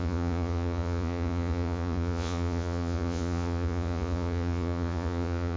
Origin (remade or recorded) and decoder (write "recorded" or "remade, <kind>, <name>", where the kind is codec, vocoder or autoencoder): remade, vocoder, Vocos